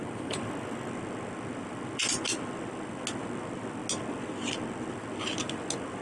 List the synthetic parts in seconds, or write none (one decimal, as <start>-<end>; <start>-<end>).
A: none